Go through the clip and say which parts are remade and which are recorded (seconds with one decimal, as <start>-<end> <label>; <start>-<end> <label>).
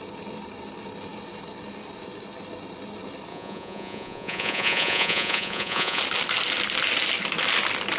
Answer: 0.0-3.3 recorded; 3.3-6.0 remade; 6.0-8.0 recorded